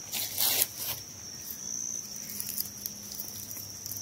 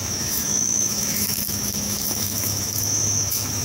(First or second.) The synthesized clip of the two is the second